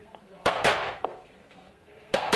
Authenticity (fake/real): fake